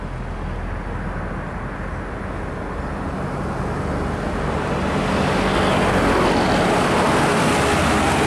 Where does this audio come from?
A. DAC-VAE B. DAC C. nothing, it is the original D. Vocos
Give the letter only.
C